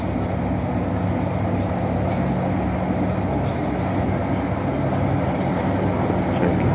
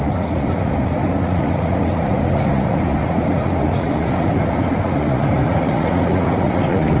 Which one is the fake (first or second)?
second